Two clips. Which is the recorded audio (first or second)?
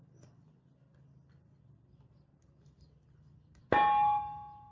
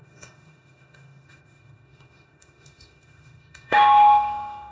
first